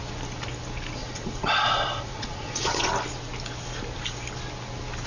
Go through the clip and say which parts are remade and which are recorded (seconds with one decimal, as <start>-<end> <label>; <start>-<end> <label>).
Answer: 0.0-1.0 recorded; 1.0-2.9 remade; 2.9-5.1 recorded